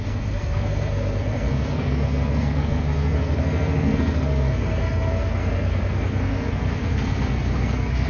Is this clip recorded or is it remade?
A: remade